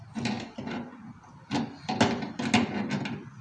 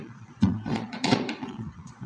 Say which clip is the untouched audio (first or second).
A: first